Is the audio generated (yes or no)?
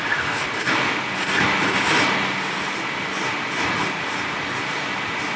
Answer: no